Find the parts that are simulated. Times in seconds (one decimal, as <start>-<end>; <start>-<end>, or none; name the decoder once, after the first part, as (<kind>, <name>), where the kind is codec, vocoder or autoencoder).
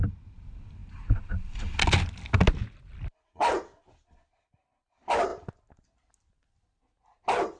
none